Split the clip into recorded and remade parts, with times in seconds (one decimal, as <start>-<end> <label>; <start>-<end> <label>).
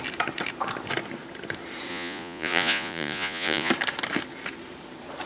0.0-1.9 recorded; 1.9-3.7 remade; 3.7-5.3 recorded